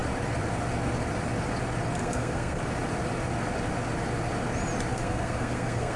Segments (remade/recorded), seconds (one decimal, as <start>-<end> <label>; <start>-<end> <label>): 0.0-2.0 recorded; 2.0-2.6 remade; 2.6-4.9 recorded; 4.9-6.0 remade